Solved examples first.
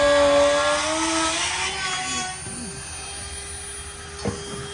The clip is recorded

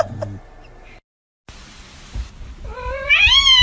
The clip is recorded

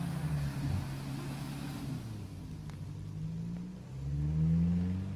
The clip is recorded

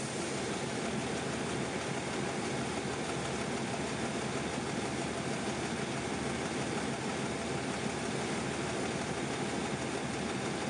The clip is recorded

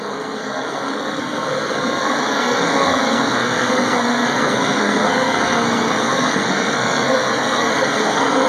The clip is remade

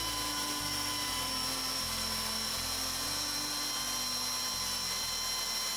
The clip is recorded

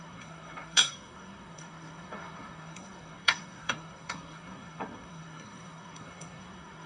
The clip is remade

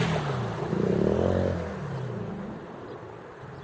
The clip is recorded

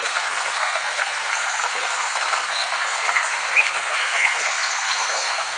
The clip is remade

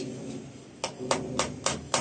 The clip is recorded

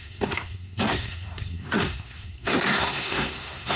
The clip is remade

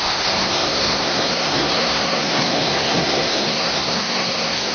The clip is remade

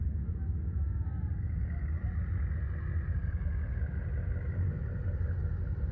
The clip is recorded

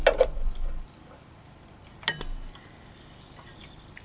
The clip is recorded